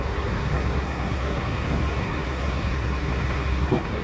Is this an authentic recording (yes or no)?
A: no